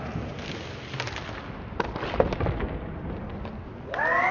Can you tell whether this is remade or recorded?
recorded